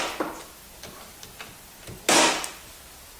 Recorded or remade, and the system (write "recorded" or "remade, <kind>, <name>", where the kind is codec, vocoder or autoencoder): recorded